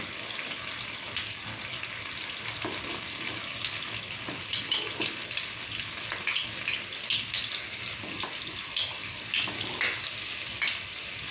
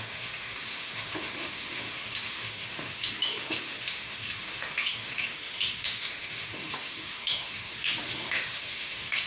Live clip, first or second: first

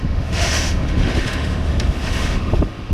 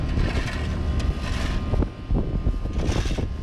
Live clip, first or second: second